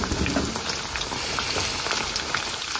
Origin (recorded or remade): recorded